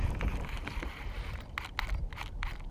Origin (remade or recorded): recorded